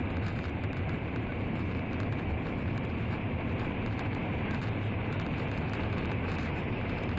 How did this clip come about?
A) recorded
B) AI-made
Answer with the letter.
B